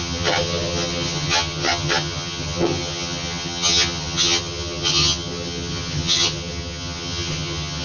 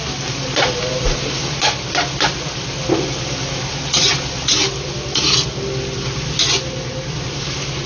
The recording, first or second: second